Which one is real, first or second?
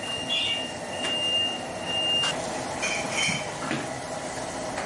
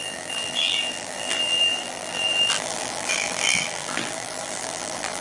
first